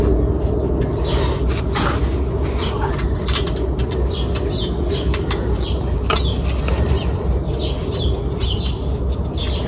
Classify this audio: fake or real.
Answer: real